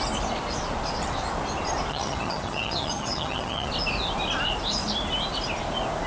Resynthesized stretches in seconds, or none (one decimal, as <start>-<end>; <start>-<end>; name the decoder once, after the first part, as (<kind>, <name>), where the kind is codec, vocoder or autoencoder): 1.9-3.7 (vocoder, HiFi-GAN)